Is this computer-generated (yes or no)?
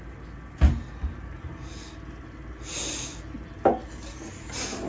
no